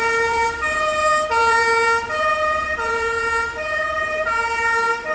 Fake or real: fake